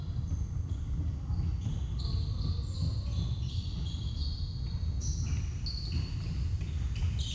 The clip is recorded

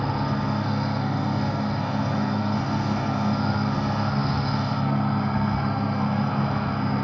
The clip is remade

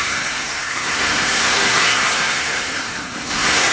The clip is remade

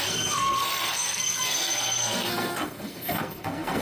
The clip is remade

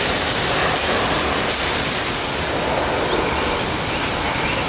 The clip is recorded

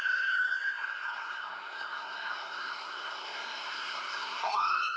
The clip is remade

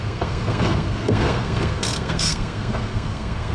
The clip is remade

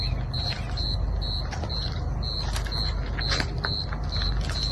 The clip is recorded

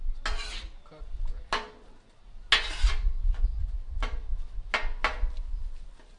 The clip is recorded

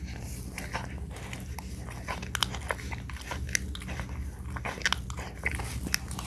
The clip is recorded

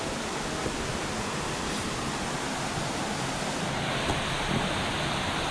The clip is recorded